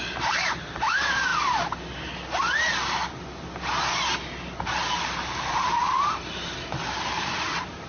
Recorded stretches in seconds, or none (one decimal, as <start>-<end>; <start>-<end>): 1.3-5.5